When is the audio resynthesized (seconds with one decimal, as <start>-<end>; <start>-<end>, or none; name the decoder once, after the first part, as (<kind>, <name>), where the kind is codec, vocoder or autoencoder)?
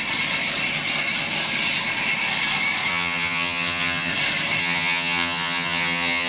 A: 2.9-4.1 (vocoder, HiFi-GAN); 4.6-6.3